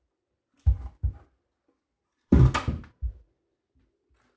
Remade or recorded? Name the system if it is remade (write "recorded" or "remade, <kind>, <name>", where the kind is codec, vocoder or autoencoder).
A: recorded